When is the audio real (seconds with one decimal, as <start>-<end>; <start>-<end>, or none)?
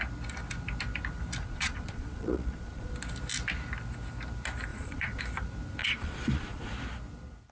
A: 0.0-1.4; 2.9-4.7; 5.2-5.8; 6.7-7.5